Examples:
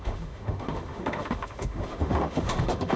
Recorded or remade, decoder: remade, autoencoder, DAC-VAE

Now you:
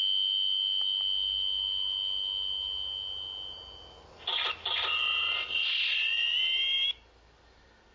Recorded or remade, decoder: recorded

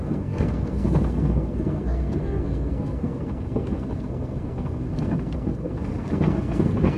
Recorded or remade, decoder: remade, codec, SNAC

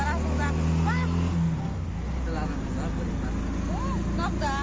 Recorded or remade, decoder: recorded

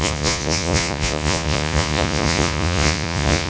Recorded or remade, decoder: remade, vocoder, Vocos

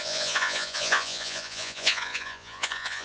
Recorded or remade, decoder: remade, vocoder, Vocos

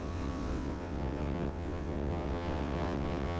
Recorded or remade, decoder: remade, vocoder, WaveNeXt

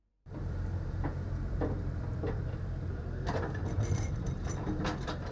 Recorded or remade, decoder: remade, vocoder, BigVGAN v2